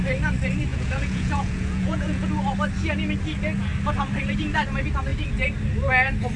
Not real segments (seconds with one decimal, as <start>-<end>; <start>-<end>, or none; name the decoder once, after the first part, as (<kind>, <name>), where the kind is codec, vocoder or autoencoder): 0.7-2.3 (vocoder, Vocos)